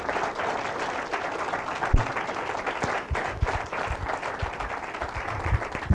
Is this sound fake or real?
real